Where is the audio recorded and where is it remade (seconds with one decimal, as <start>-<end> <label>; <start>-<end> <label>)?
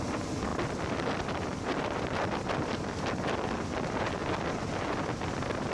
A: 0.0-4.2 remade; 4.2-5.7 recorded